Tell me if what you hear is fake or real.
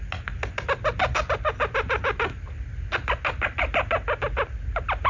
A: real